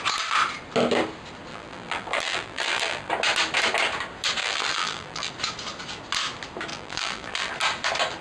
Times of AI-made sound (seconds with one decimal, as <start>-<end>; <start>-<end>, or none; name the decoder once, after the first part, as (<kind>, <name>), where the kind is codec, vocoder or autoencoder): 1.5-3.1 (vocoder, BigVGAN v2); 4.4-5.3; 6.7-7.5